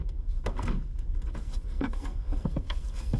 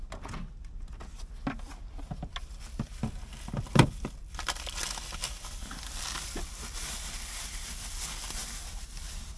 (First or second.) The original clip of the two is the second